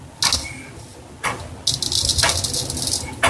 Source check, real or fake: real